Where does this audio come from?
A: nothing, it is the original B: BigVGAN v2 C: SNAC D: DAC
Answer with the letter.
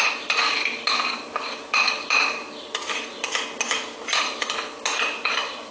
A